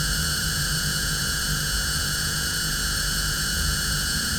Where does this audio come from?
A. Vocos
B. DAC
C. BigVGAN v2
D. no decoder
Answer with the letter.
A